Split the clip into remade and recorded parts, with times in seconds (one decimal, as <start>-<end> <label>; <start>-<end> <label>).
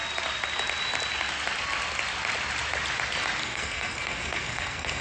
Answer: 0.0-3.4 recorded; 3.4-5.0 remade